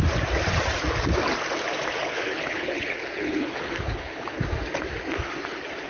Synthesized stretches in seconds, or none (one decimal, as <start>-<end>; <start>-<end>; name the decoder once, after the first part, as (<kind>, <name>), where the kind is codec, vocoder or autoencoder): 2.0-4.4 (codec, HILCodec)